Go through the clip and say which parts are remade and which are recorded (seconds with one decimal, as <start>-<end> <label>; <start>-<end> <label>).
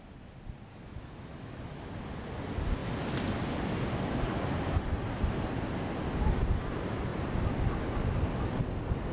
0.0-0.7 recorded; 0.7-1.8 remade; 1.8-9.1 recorded